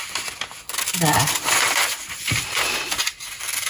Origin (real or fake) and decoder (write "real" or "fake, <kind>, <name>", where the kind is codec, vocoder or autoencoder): real